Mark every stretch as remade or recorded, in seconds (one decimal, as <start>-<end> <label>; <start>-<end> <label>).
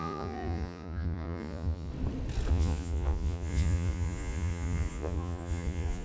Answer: 0.0-1.9 remade; 1.9-2.5 recorded; 2.5-6.0 remade